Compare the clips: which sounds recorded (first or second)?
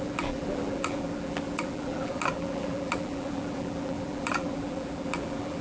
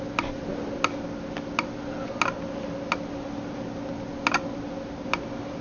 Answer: second